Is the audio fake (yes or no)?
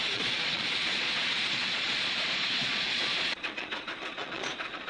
yes